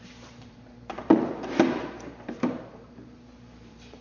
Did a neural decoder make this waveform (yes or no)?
yes